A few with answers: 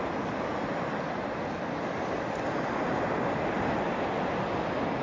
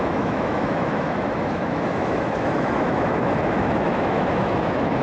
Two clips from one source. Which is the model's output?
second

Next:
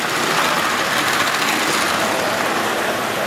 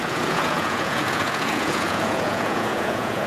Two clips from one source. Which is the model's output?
second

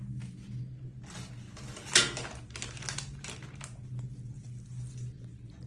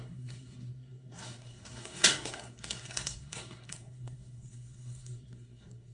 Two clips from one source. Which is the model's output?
second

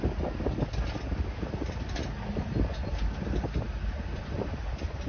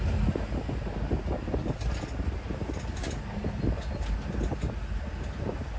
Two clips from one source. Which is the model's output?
first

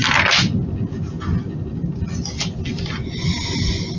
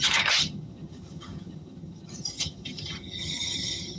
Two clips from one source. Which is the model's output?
second